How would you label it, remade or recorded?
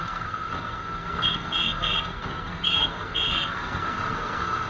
remade